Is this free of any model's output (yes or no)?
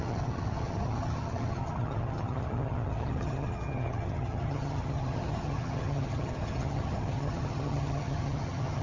no